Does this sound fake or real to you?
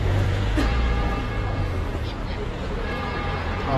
fake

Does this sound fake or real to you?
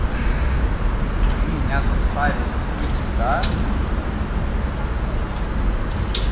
real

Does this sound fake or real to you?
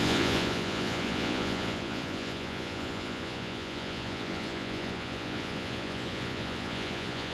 fake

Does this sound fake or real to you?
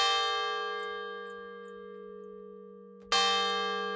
real